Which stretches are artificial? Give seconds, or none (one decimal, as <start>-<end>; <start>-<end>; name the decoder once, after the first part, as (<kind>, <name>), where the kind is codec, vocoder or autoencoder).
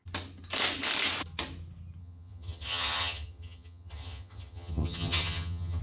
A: 2.0-5.8 (vocoder, HiFi-GAN)